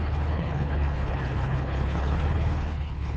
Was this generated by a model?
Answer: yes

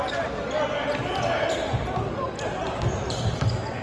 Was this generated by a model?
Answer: no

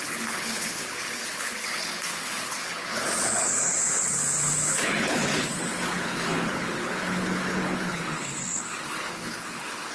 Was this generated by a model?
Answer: yes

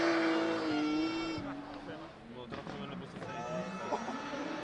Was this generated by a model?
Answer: no